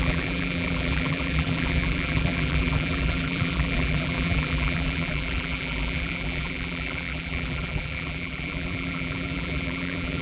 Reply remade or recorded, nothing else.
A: remade